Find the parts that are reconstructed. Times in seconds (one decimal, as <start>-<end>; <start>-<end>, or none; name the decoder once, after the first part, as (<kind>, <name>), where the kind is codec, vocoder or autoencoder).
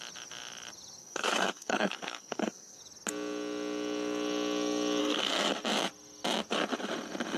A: 1.0-2.8 (codec, SNAC); 5.0-5.5